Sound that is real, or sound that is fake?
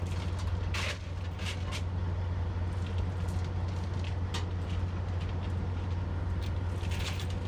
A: real